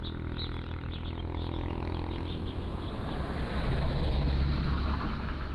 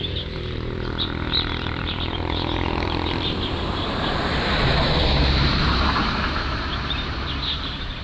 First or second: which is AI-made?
second